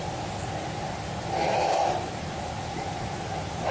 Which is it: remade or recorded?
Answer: recorded